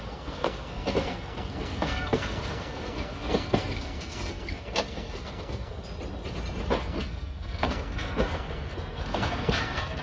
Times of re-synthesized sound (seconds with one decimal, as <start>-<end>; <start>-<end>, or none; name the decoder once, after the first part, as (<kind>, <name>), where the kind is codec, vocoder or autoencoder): 0.0-5.8 (codec, SNAC); 6.8-10.0